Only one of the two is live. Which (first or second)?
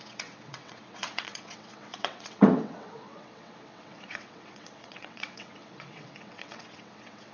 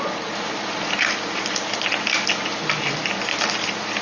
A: second